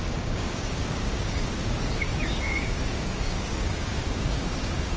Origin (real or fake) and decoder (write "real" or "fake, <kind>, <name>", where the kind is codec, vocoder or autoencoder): fake, codec, DAC